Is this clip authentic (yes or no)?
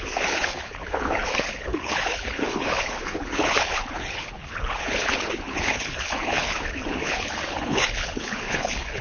no